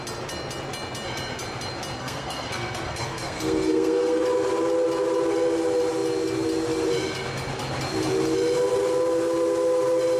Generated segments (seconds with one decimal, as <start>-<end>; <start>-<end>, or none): 2.0-4.2